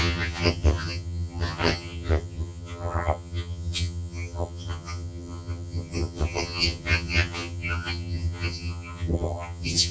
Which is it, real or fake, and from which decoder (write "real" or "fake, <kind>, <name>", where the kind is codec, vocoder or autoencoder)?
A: fake, vocoder, HiFi-GAN